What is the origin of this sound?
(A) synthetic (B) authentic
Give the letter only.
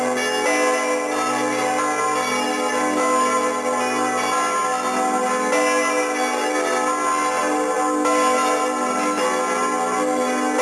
B